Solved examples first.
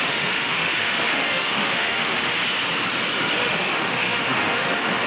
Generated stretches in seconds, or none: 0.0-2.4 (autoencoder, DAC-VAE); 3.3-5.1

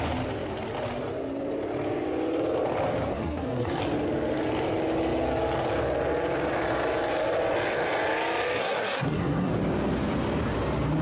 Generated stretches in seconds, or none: 3.1-3.8 (codec, SNAC); 8.6-9.5

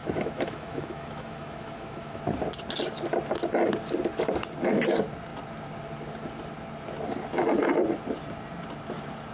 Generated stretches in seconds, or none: 0.0-2.2 (autoencoder, DAC-VAE)

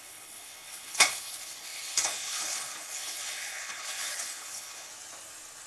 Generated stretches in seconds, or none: 0.0-4.9 (codec, HILCodec)